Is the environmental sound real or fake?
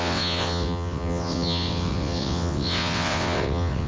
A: fake